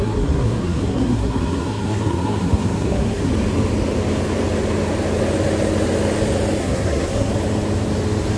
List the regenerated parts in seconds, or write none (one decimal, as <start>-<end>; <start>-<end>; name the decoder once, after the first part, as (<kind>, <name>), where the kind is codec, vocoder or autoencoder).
0.0-3.3 (codec, SNAC); 6.6-7.3